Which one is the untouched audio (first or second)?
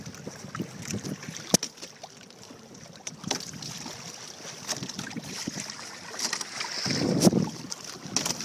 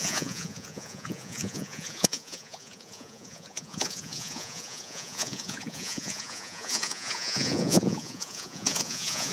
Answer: first